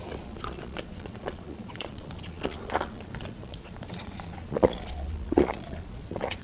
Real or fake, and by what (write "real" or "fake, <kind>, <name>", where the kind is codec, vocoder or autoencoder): fake, vocoder, Vocos